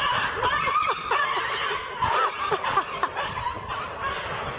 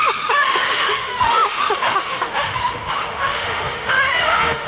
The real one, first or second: first